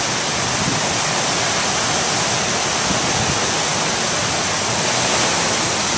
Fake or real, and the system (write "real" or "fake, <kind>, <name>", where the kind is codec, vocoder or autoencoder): real